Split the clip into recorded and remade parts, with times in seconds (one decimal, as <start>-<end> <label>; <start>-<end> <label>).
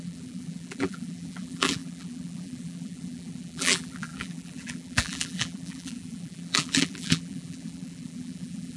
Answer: 0.0-8.8 remade